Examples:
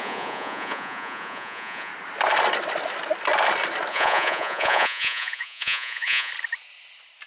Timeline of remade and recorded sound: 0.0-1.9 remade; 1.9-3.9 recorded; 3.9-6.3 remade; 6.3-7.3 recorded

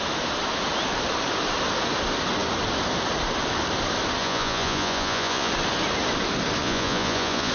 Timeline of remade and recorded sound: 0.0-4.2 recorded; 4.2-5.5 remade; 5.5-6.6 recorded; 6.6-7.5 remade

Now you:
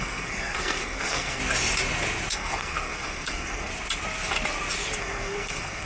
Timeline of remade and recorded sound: 0.0-1.4 remade; 1.4-2.3 recorded; 2.3-3.7 remade; 3.7-5.0 recorded; 5.0-5.9 remade